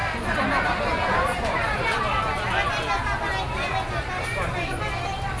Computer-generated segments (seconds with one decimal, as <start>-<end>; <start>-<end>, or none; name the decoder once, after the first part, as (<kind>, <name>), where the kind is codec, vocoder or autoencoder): none